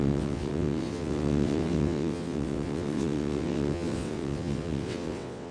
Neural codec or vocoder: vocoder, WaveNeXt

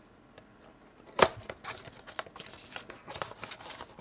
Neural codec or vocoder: none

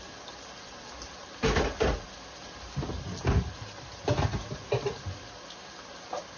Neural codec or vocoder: none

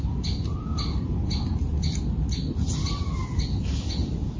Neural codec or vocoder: none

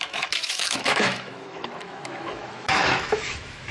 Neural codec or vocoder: autoencoder, DAC-VAE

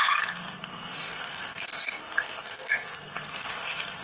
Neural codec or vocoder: codec, SNAC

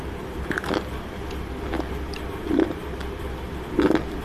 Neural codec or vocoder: vocoder, BigVGAN v2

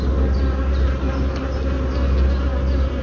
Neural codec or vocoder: none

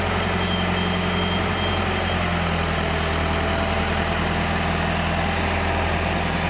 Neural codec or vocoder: none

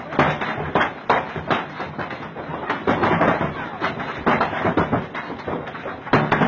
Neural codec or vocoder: none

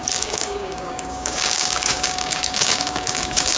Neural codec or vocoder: codec, DAC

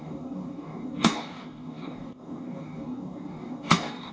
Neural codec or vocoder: codec, DAC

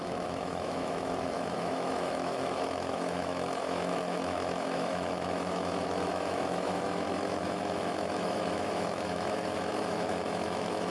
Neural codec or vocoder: autoencoder, DAC-VAE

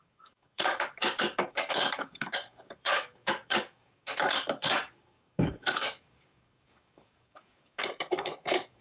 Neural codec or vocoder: codec, DAC